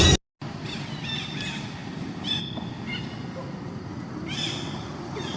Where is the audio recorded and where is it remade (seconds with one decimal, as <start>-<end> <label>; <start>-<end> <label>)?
0.0-5.4 recorded